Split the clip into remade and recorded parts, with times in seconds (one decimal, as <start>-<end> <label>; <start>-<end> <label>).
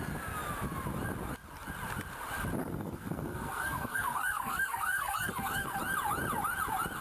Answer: 0.0-2.6 recorded; 2.6-5.8 remade; 5.8-7.0 recorded